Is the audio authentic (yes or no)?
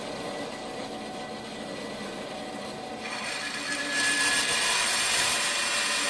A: yes